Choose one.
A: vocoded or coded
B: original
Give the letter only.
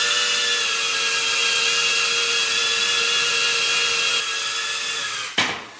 B